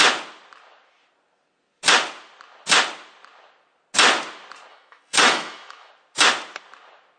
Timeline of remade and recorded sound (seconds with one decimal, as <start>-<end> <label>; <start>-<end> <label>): 0.0-4.7 recorded; 4.7-5.9 remade; 5.9-7.2 recorded